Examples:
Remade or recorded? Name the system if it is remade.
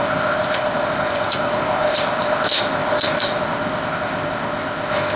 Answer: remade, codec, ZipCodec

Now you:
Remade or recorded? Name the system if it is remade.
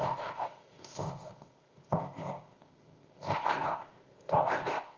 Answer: remade, codec, ZipCodec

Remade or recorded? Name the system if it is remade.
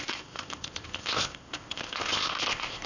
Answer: remade, codec, ZipCodec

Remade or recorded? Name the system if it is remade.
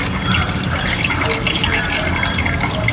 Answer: recorded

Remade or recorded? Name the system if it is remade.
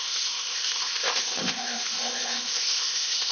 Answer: remade, codec, ZipCodec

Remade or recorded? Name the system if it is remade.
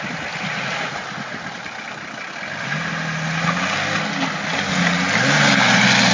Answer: recorded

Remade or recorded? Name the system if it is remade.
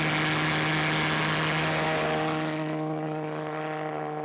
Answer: recorded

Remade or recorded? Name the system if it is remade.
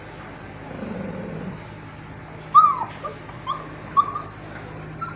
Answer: recorded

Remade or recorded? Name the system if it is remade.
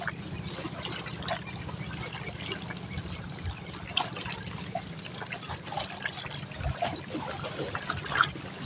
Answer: recorded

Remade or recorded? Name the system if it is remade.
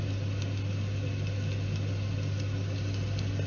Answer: recorded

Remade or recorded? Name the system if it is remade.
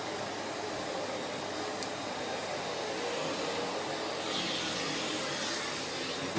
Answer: recorded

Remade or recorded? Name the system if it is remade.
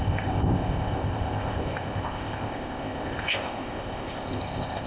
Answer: remade, codec, ZipCodec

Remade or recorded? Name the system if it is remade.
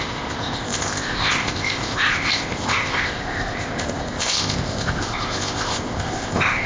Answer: remade, codec, ZipCodec